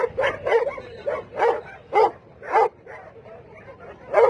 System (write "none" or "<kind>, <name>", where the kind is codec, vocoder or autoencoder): vocoder, BigVGAN v2